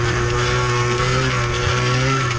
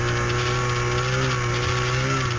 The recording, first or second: second